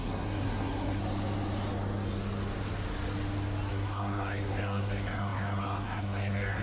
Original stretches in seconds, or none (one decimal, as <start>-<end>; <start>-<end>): 1.0-3.7